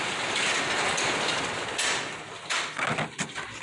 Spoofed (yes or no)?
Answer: no